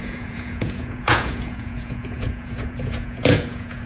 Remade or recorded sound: remade